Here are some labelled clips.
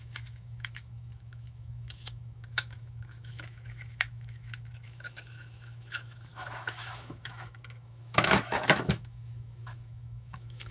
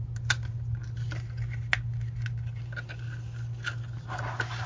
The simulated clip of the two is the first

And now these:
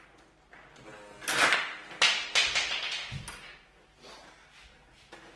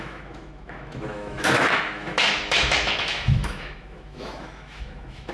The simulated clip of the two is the second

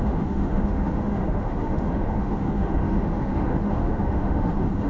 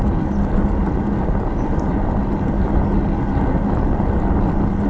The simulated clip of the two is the first